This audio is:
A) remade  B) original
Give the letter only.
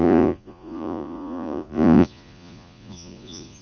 A